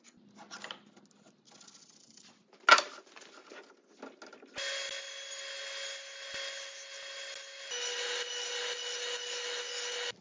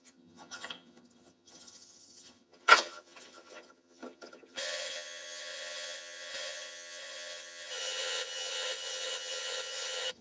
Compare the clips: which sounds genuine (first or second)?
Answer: first